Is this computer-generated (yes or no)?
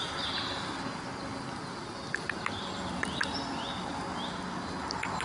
no